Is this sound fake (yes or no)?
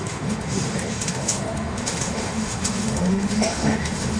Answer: yes